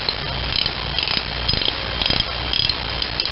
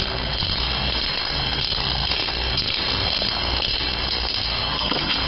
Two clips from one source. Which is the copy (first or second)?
second